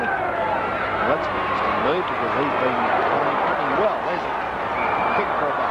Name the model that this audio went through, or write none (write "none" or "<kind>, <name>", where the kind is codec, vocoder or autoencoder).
none